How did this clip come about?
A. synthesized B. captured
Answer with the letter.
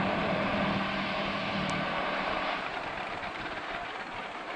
A